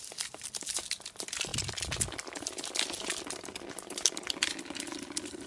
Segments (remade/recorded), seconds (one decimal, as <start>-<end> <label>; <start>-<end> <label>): 0.0-5.5 recorded